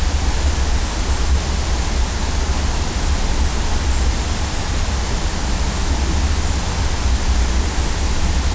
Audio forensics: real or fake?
real